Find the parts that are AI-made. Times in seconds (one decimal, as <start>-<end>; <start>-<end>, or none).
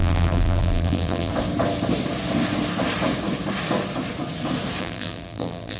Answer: 0.0-1.3; 4.8-5.8